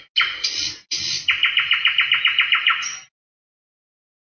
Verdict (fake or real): real